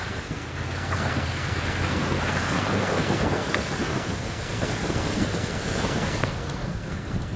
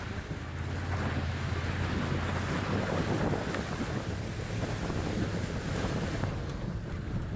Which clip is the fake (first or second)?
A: first